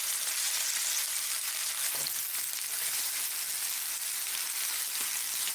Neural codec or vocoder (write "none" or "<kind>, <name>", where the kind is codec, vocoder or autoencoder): none